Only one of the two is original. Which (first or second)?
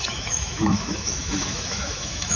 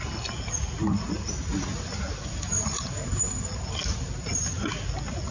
second